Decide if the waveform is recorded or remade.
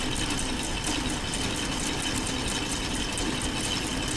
recorded